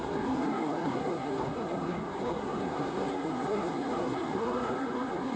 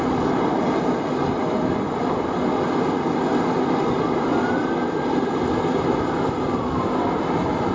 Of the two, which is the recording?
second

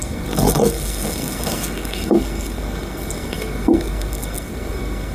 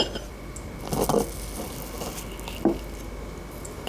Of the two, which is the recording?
second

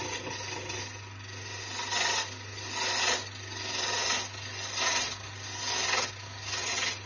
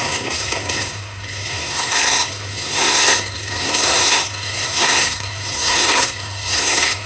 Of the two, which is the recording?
first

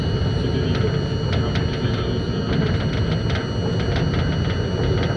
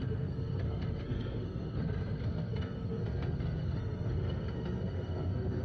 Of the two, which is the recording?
first